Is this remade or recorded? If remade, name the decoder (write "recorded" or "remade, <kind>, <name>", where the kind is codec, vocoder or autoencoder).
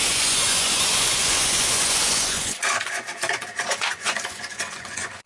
remade, vocoder, Vocos